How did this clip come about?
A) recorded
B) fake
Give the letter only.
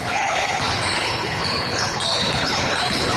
B